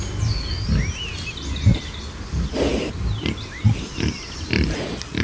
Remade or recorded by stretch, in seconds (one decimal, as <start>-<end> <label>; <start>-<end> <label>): 0.0-5.2 recorded